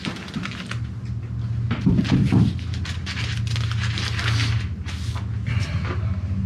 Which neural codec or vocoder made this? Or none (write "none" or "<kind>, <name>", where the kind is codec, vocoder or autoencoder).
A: none